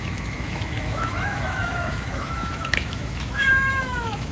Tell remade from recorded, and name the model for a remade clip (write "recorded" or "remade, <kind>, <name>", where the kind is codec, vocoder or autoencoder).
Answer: remade, autoencoder, DAC-VAE